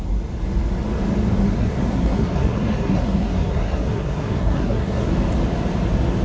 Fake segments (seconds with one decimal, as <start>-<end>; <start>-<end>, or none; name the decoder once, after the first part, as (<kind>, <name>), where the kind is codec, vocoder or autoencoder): 1.4-5.1 (codec, SNAC)